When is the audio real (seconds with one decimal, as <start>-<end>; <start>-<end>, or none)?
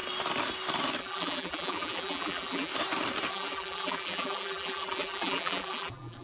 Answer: 0.0-1.0; 2.7-3.3